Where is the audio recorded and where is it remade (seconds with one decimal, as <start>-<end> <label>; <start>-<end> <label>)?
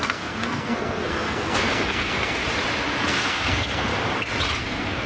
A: 0.0-2.4 remade; 2.4-3.0 recorded; 3.0-3.9 remade; 3.9-4.6 recorded; 4.6-5.1 remade